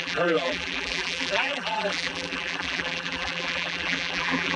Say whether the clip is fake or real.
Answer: fake